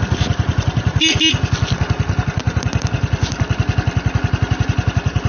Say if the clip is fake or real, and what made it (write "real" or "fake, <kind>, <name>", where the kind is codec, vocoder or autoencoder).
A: real